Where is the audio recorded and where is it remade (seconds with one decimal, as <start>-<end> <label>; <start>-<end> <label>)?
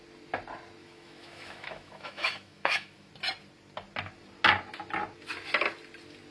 0.0-0.8 recorded; 0.8-3.1 remade; 3.1-6.3 recorded